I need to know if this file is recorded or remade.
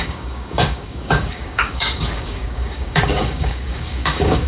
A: remade